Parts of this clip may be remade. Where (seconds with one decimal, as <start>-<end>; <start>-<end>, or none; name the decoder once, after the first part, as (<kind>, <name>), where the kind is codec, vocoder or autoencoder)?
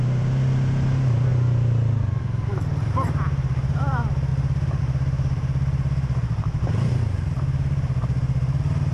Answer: 0.0-1.3 (vocoder, BigVGAN v2); 2.9-8.9